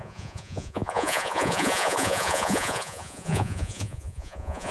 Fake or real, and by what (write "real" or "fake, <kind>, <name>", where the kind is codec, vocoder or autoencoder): fake, vocoder, Vocos